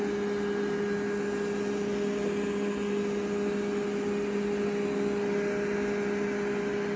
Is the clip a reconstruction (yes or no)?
no